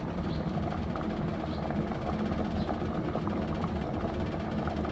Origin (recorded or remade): recorded